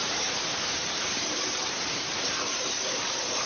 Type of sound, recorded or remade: remade